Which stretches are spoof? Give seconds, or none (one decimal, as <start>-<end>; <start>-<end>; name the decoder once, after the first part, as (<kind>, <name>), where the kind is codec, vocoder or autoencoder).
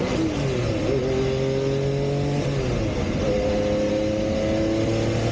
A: none